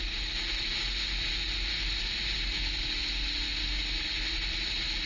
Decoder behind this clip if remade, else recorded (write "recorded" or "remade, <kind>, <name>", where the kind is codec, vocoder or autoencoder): recorded